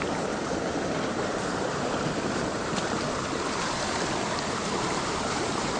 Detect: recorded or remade remade